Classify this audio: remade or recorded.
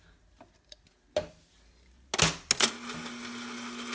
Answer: recorded